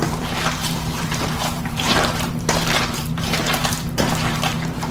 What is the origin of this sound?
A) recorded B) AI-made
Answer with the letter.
B